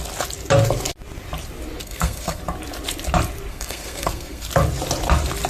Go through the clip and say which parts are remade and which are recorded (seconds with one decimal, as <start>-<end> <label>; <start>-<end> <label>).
0.0-1.8 recorded; 1.8-2.4 remade; 2.4-3.5 recorded; 3.5-4.5 remade; 4.5-5.5 recorded